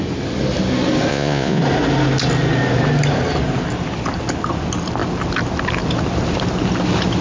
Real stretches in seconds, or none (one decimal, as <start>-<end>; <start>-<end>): 0.0-1.1; 1.6-7.2